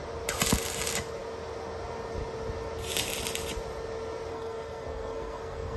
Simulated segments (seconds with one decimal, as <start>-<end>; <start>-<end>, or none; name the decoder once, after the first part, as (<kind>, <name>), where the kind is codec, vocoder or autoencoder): 4.3-5.8 (codec, SNAC)